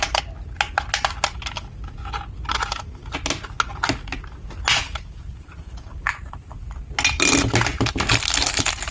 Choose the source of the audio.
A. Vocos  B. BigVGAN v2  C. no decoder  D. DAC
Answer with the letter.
C